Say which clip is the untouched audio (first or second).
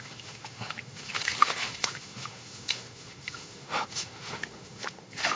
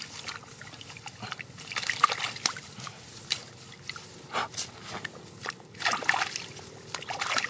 second